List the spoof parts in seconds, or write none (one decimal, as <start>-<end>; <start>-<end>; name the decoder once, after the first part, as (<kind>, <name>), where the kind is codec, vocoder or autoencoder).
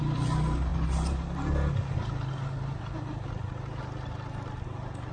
none